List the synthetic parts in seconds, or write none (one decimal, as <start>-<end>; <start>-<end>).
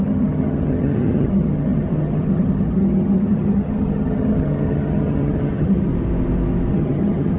0.0-5.9; 6.7-7.4